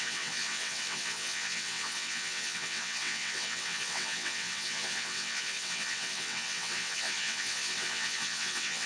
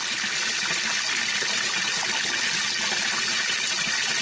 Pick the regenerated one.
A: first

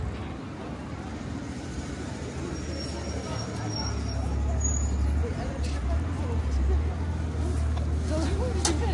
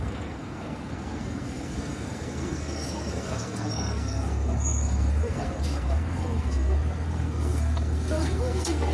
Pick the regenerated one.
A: second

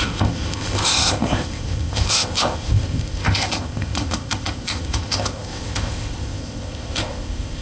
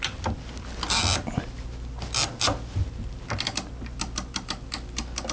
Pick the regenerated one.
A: first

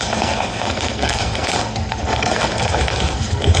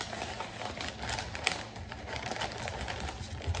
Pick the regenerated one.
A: first